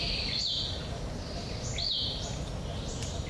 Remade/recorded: recorded